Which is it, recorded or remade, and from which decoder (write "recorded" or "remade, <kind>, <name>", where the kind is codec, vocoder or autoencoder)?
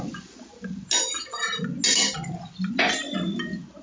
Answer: recorded